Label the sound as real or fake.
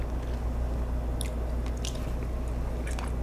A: real